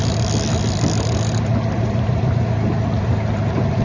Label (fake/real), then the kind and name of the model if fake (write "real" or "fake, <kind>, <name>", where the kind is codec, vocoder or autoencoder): real